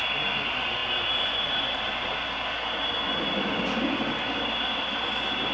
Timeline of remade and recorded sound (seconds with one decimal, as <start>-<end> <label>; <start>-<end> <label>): 0.0-5.5 recorded